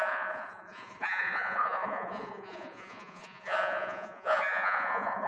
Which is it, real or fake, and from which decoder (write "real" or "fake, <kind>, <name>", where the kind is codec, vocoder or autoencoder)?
fake, vocoder, Vocos